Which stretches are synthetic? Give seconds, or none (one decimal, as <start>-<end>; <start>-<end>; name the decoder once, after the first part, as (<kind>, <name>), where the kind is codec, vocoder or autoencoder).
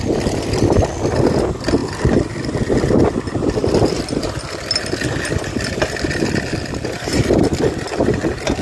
none